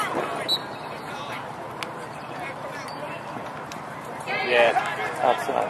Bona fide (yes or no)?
yes